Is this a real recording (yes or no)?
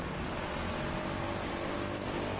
yes